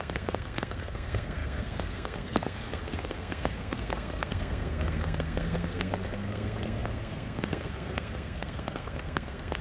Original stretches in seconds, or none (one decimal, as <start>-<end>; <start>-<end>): none